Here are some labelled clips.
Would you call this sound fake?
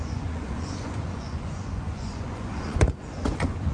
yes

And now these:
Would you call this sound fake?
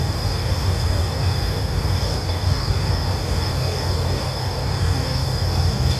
yes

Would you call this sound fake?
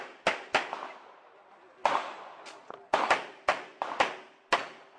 no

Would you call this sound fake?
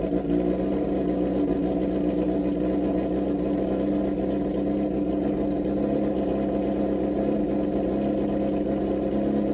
no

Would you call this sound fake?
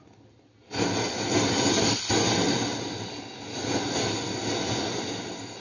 no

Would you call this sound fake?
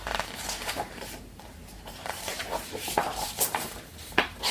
yes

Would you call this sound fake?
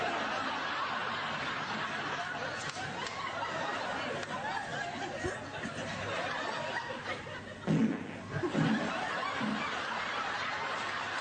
no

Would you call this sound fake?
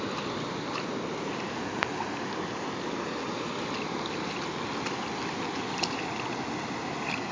no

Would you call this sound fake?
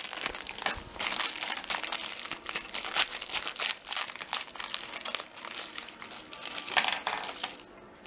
no